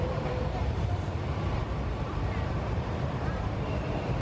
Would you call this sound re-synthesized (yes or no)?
yes